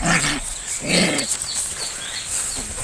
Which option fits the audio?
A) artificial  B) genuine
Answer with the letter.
B